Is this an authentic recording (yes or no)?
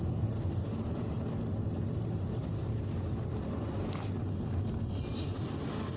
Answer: yes